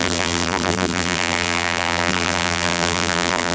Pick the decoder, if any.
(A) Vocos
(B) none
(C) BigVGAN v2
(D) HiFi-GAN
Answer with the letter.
C